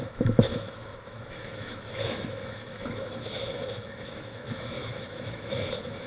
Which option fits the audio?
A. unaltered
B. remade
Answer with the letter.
B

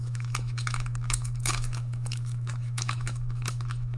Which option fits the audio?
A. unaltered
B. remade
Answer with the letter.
B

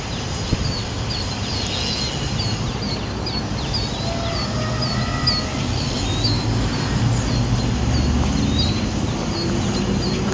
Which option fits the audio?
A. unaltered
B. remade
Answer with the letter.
A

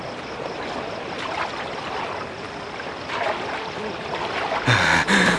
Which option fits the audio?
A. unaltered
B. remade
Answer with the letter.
A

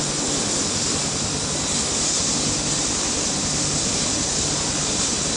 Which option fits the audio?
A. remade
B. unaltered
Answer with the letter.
B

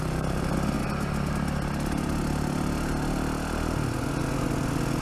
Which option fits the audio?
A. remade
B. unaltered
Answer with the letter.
B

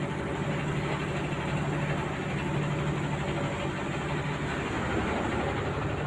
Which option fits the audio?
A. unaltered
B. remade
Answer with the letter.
A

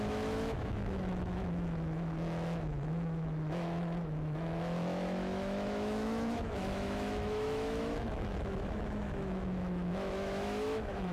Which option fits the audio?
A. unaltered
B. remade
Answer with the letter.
B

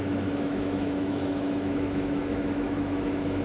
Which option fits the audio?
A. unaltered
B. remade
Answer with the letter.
B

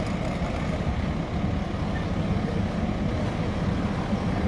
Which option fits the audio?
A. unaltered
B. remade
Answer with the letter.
A